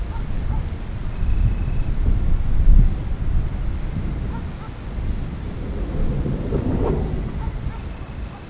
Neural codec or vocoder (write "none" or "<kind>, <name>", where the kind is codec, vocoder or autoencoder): none